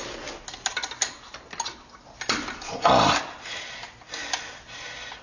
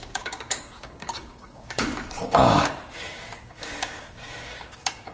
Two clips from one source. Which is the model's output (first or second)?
second